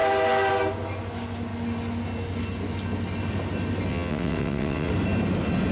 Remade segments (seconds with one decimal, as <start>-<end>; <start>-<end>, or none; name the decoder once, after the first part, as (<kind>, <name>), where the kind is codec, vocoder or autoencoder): 3.9-4.9 (vocoder, WaveNeXt)

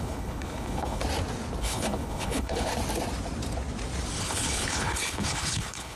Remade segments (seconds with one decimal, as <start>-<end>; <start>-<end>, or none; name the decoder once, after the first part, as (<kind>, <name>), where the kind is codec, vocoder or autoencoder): 0.0-1.0 (codec, HILCodec); 1.6-2.7; 4.2-6.0

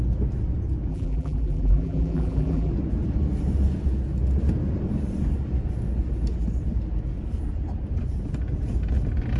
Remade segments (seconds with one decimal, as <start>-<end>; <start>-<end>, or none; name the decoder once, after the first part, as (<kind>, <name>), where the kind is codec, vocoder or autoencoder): 0.9-2.7 (vocoder, BigVGAN v2)

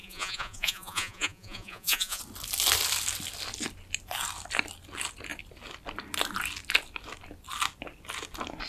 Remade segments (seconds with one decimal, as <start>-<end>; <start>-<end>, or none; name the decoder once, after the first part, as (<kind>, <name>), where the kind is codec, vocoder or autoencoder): 0.0-2.2 (vocoder, Vocos)

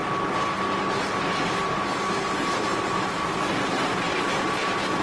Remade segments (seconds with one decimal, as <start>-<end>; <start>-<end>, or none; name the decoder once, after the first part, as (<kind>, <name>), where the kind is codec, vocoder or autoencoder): none

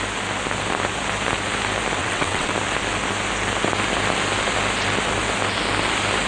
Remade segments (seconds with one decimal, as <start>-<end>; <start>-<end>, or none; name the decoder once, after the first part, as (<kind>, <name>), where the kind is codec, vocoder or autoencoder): 2.0-2.5 (vocoder, WaveNeXt)